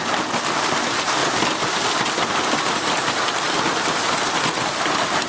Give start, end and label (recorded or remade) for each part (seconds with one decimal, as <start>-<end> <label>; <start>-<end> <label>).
0.0-5.3 recorded